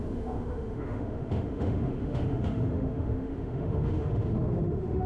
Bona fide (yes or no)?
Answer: no